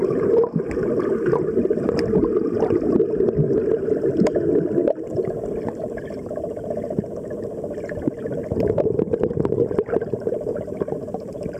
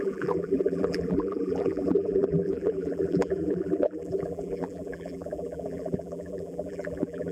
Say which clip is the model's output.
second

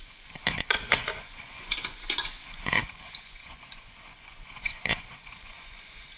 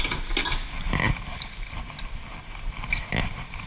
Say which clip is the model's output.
first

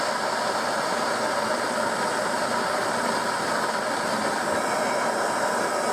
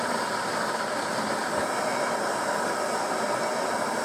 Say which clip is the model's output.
second